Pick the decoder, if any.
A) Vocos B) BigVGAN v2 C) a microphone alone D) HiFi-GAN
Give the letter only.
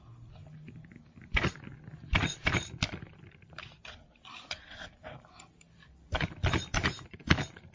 C